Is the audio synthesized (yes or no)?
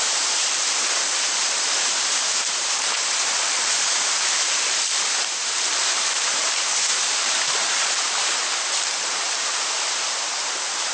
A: yes